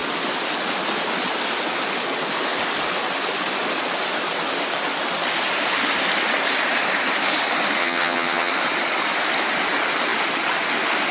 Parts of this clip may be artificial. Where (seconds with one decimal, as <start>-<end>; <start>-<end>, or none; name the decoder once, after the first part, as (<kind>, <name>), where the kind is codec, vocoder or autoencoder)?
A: 7.8-8.5 (vocoder, HiFi-GAN)